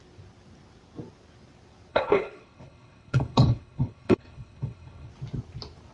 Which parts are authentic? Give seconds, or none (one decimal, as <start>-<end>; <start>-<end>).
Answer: 0.0-1.9; 5.1-5.9